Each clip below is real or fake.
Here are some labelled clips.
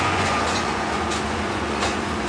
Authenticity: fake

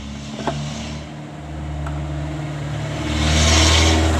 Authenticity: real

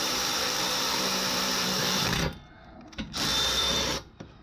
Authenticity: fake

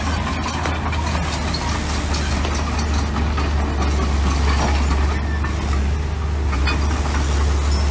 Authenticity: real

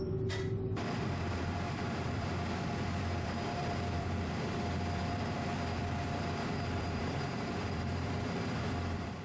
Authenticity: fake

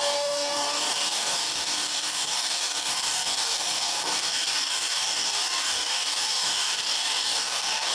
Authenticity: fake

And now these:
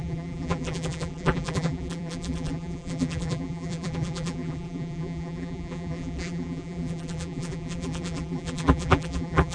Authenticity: fake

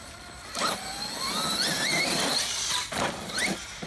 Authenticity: real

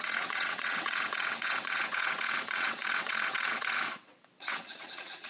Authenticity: fake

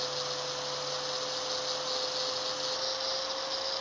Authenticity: real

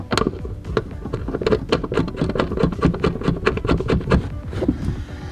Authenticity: real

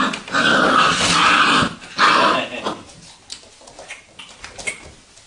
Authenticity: real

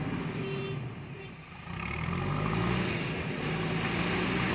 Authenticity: real